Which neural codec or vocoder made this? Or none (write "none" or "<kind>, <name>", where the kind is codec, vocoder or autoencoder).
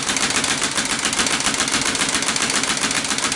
none